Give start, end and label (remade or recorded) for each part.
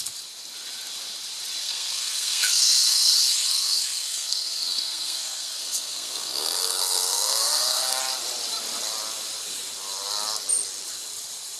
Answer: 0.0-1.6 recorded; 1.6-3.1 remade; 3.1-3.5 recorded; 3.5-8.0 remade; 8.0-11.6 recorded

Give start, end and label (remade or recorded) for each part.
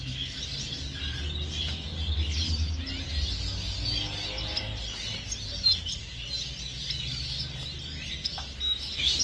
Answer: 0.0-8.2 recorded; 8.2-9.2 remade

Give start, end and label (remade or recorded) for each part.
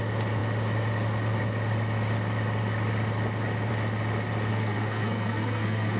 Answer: 0.0-4.5 recorded; 4.5-6.0 remade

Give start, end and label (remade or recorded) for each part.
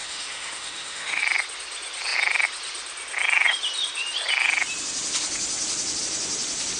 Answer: 0.0-1.2 remade; 1.2-6.8 recorded